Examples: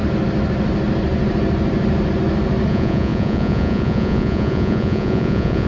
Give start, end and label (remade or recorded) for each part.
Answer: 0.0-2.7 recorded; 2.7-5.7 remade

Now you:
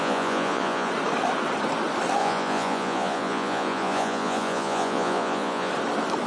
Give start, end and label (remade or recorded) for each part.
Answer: 0.0-0.9 remade; 0.9-2.2 recorded; 2.2-5.7 remade; 5.7-6.3 recorded

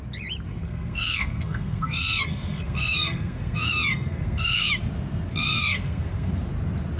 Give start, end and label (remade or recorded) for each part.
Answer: 0.0-0.5 recorded; 0.5-4.7 remade; 4.7-5.3 recorded; 5.3-6.3 remade; 6.3-7.0 recorded

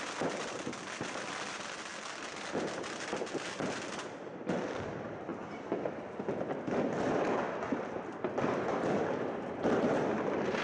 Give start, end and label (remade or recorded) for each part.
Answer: 0.0-1.9 remade; 1.9-2.8 recorded; 2.8-5.3 remade; 5.3-7.3 recorded; 7.3-10.6 remade

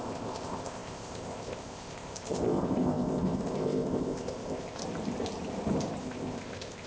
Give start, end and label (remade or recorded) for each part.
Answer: 0.0-4.8 remade; 4.8-6.0 recorded; 6.0-6.9 remade

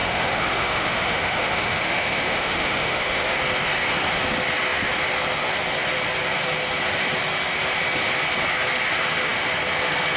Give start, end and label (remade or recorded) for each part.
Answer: 0.0-3.4 remade; 3.4-10.2 recorded